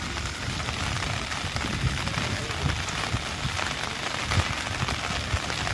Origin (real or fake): real